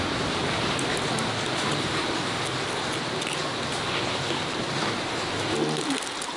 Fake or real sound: real